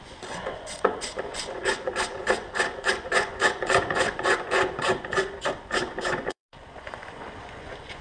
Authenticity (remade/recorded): remade